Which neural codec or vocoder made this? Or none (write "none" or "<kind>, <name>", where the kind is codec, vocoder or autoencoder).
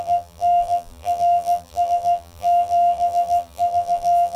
vocoder, BigVGAN v2